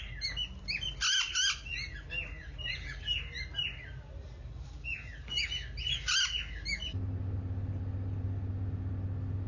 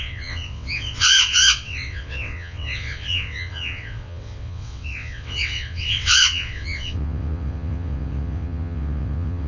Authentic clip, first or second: first